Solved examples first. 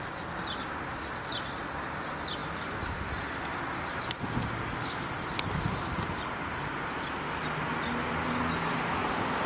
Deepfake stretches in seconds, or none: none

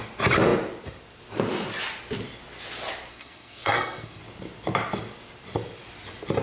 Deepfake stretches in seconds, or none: 3.1-4.2 (codec, SNAC)

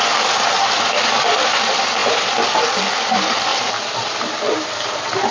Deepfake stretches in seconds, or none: 0.0-5.3 (vocoder, BigVGAN v2)

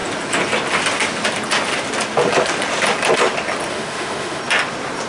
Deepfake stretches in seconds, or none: 3.7-4.4 (autoencoder, DAC-VAE)